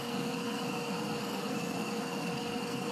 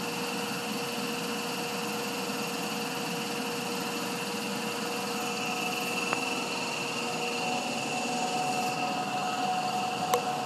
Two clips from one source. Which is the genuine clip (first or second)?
second